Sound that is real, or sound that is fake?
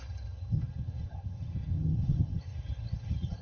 fake